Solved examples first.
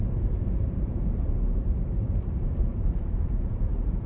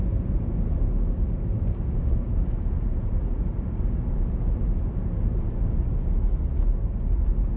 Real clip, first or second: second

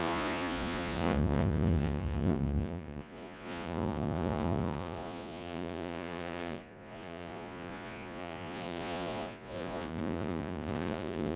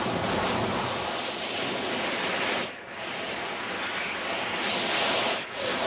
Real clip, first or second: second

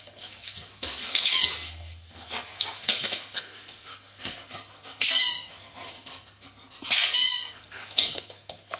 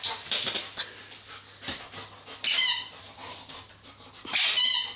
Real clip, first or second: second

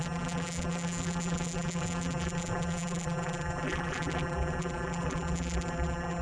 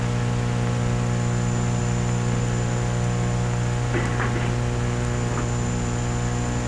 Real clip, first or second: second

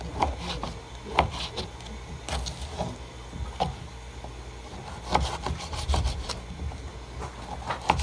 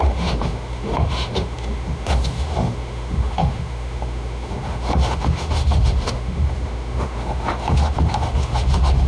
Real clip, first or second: first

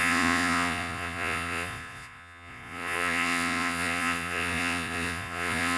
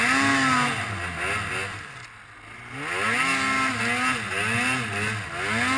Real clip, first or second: second